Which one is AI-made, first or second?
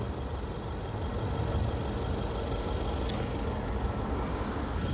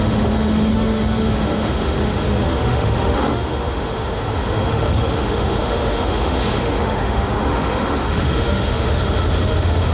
second